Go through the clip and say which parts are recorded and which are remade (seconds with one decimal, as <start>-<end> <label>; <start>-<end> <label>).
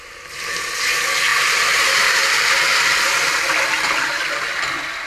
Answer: 0.0-5.1 recorded